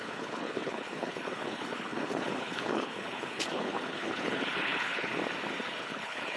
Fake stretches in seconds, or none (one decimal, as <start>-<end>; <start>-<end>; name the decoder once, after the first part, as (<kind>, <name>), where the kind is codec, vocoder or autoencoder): 0.0-5.1 (codec, HILCodec); 5.7-6.4